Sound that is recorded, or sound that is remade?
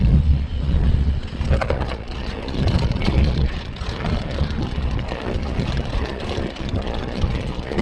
remade